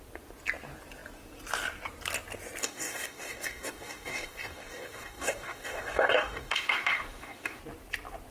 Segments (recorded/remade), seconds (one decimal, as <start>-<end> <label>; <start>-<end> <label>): 0.0-2.6 recorded; 2.6-7.6 remade; 7.6-8.3 recorded